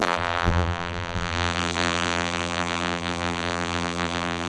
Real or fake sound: fake